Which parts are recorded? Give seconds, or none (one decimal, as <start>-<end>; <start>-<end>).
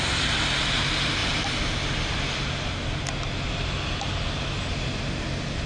0.0-5.7